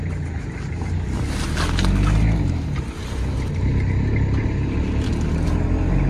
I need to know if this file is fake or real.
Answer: real